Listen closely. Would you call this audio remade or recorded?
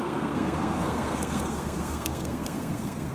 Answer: remade